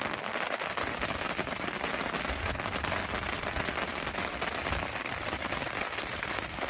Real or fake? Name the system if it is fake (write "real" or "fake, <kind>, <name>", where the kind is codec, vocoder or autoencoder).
real